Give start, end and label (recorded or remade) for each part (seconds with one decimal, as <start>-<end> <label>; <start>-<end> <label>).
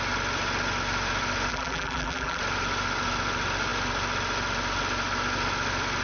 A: 0.0-1.5 recorded; 1.5-2.4 remade; 2.4-6.0 recorded